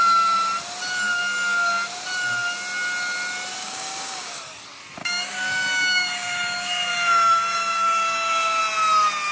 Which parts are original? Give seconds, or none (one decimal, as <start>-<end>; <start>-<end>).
0.0-3.6; 4.4-5.0; 8.6-9.3